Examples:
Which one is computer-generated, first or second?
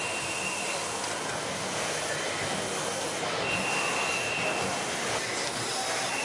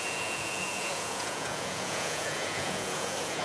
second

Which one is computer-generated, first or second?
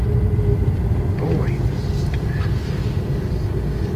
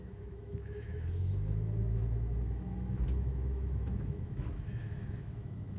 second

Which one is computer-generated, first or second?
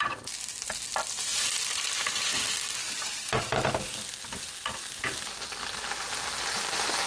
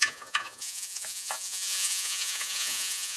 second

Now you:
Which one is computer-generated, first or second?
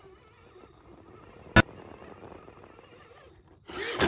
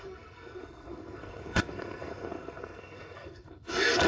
second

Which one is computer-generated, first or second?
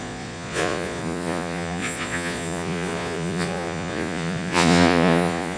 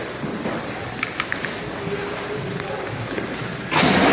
first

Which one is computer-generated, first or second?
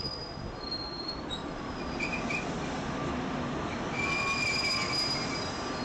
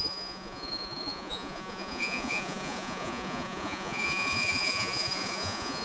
second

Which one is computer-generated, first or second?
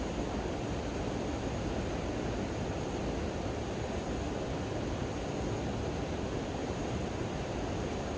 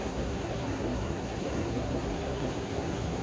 second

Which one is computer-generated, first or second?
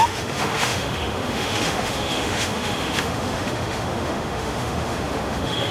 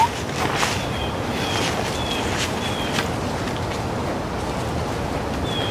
first